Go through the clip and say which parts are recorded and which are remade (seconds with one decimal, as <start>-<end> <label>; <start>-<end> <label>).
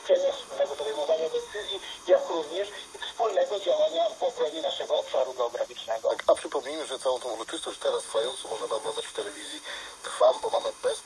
0.0-5.2 remade; 5.2-7.6 recorded; 7.6-11.1 remade